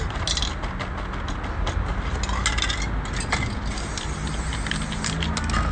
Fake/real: real